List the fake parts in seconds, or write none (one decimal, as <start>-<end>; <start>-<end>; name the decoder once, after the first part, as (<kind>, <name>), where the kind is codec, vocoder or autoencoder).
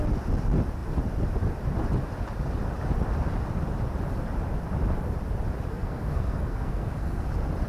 5.7-7.3 (codec, SNAC)